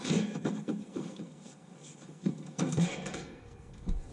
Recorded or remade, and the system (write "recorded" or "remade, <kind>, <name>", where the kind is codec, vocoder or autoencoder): remade, codec, SNAC